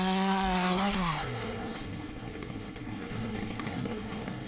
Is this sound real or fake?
fake